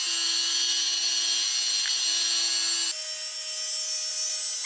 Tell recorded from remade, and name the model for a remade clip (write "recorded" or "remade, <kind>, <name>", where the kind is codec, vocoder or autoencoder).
recorded